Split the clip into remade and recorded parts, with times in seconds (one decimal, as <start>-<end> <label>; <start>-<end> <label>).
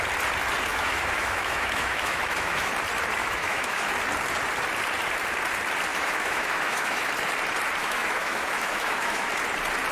0.0-0.7 recorded; 0.7-2.7 remade; 2.7-3.2 recorded; 3.2-3.9 remade; 3.9-5.9 recorded; 5.9-7.1 remade; 7.1-7.8 recorded; 7.8-9.3 remade; 9.3-9.9 recorded